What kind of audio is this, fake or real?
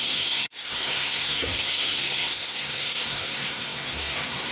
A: fake